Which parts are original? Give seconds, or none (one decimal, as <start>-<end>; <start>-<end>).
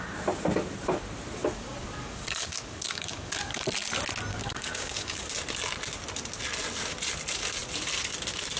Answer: 0.0-1.4; 3.6-4.3; 5.3-8.6